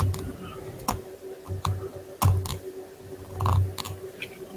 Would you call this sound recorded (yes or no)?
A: yes